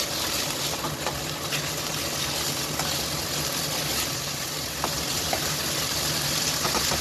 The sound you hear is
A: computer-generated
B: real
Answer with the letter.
B